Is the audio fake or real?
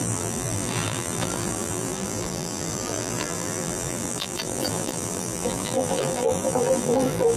fake